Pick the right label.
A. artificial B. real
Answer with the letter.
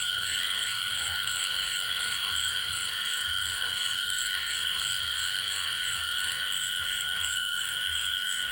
A